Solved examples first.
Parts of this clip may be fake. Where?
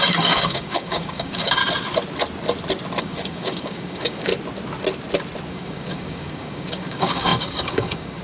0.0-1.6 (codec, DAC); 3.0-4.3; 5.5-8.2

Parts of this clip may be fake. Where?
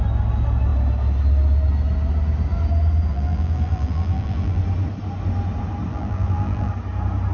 3.1-4.6 (vocoder, BigVGAN v2); 5.9-6.7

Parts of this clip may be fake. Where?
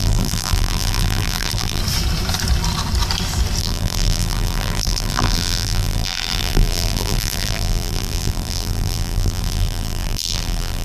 0.0-1.8 (vocoder, BigVGAN v2); 3.6-10.8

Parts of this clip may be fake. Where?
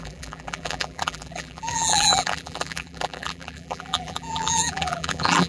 0.0-5.5 (vocoder, BigVGAN v2)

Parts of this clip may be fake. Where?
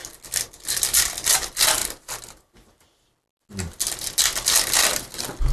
none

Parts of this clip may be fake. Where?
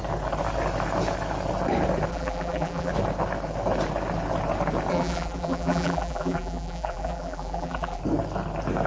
2.1-2.9 (vocoder, BigVGAN v2); 4.9-8.0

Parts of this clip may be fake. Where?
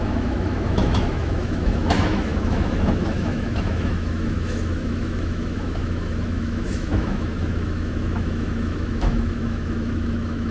0.0-10.5 (autoencoder, DAC-VAE)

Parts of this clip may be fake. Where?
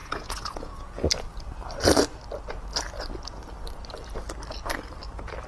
0.0-1.1 (vocoder, Vocos)